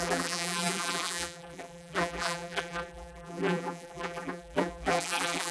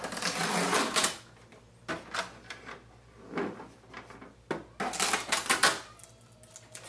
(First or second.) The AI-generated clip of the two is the first